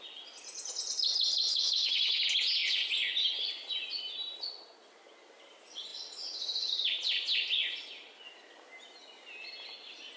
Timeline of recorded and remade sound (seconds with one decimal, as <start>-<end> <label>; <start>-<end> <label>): 0.0-1.5 recorded; 1.5-2.2 remade; 2.2-10.2 recorded